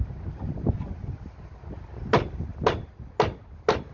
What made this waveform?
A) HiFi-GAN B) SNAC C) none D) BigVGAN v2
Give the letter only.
C